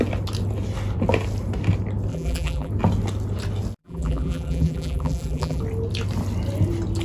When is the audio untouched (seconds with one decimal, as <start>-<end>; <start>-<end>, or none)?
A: 0.0-2.1; 2.7-3.8; 5.6-7.0